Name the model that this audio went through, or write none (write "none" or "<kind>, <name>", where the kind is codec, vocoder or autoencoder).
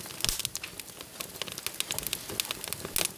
none